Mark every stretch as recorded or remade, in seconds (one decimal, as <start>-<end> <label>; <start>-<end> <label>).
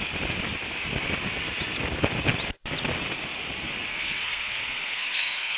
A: 0.0-3.9 recorded; 3.9-5.6 remade